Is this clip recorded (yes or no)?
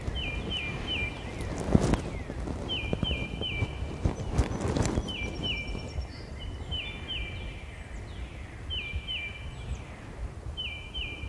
yes